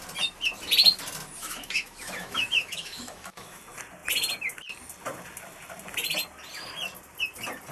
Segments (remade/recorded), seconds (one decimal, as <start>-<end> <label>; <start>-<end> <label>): 0.0-1.4 recorded; 1.4-3.6 remade; 3.6-7.7 recorded